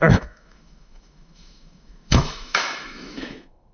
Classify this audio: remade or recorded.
remade